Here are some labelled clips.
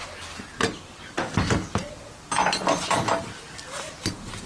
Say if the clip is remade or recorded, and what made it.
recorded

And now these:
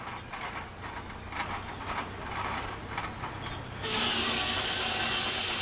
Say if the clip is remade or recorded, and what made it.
recorded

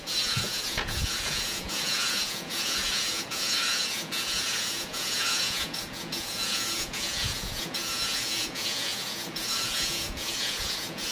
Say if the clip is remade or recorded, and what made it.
remade, vocoder, Vocos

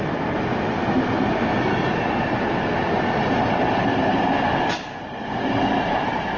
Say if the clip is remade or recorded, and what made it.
recorded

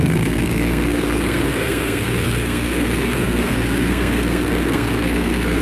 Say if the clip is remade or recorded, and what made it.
remade, codec, SNAC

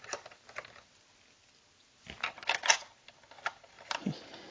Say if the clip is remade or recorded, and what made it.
recorded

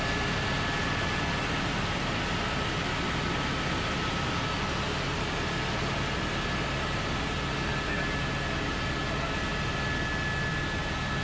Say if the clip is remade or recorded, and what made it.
recorded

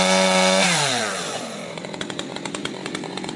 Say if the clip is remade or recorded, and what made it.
remade, vocoder, Vocos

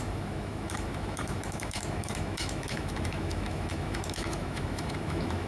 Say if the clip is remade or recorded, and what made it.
remade, autoencoder, DAC-VAE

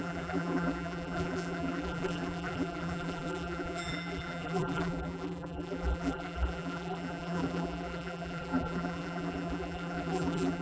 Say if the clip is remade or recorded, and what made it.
remade, vocoder, BigVGAN v2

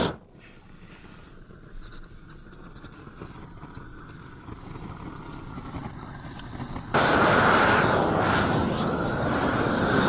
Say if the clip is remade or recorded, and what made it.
recorded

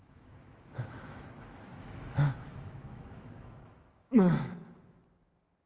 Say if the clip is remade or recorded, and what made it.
remade, autoencoder, DAC-VAE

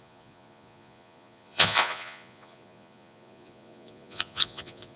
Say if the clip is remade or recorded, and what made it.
remade, vocoder, Vocos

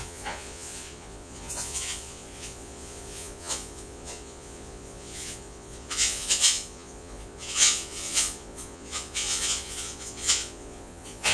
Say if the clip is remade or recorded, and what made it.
remade, vocoder, Vocos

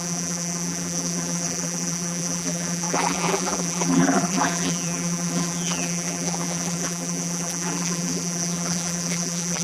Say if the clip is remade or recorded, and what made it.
remade, vocoder, BigVGAN v2